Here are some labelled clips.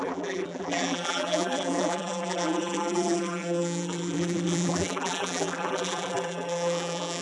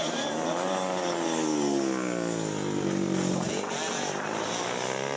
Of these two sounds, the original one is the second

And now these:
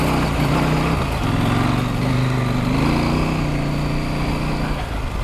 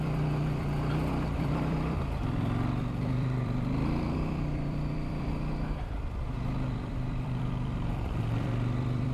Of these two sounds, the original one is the first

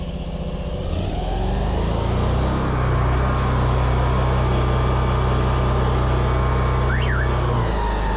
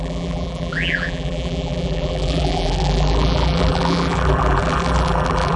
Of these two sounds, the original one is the first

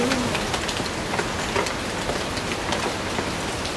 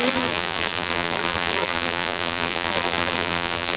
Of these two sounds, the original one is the first